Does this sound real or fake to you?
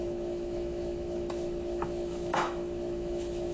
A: fake